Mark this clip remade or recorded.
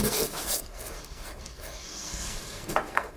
remade